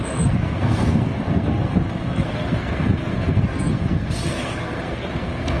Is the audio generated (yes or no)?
yes